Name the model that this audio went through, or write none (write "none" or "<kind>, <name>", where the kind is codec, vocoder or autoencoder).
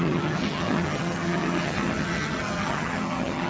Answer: vocoder, HiFi-GAN